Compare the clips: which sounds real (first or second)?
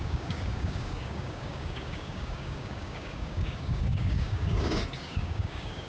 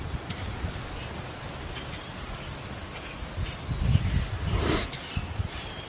second